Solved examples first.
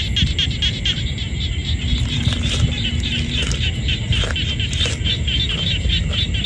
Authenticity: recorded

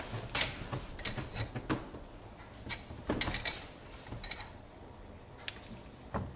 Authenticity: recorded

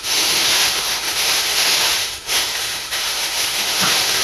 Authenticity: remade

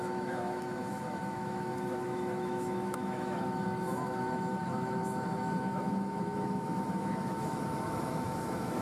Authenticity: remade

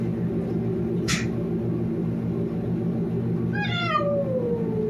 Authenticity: recorded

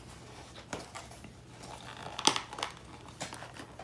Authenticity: recorded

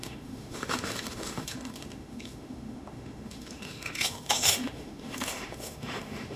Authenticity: remade